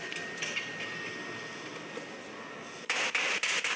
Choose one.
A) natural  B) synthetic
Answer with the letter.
A